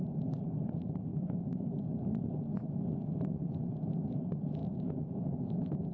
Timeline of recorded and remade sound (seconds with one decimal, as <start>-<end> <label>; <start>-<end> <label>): 0.0-1.1 recorded; 1.1-1.8 remade; 1.8-4.6 recorded; 4.6-5.9 remade